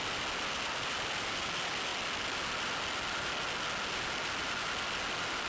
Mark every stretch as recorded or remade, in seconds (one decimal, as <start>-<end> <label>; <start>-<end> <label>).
0.0-5.5 recorded